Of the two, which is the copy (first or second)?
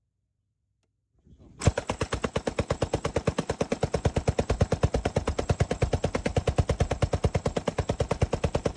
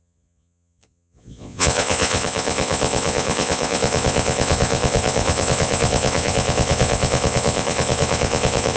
second